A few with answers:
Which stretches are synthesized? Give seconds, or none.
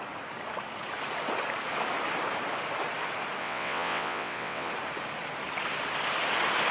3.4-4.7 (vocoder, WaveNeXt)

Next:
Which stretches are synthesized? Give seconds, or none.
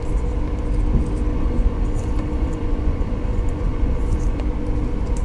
1.3-4.4 (vocoder, Vocos)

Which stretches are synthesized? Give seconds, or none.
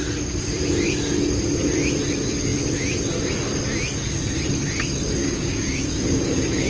5.2-6.7 (codec, DAC)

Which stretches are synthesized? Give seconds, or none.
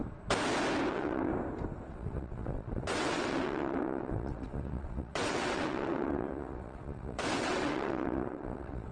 0.9-1.3 (vocoder, WaveNeXt); 1.9-8.9